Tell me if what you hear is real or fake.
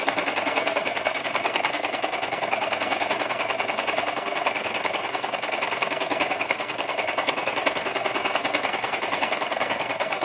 fake